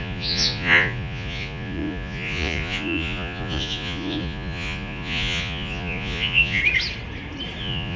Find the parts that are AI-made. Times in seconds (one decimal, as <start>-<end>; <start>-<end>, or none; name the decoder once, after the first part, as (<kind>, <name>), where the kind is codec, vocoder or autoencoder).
0.0-6.6 (vocoder, Vocos); 7.6-8.0